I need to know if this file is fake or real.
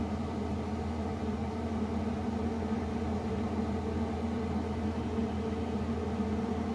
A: real